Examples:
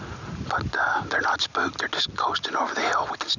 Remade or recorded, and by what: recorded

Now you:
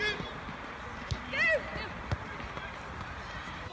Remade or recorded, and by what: recorded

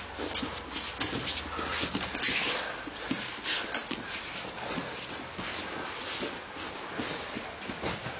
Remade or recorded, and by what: recorded